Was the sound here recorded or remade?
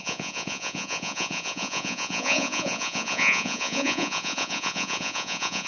remade